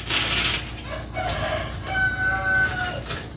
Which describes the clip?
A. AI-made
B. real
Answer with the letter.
B